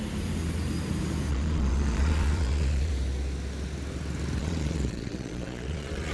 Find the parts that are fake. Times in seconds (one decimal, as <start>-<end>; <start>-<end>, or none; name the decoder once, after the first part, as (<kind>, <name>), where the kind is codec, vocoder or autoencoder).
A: 1.3-2.9 (vocoder, Vocos); 4.4-6.1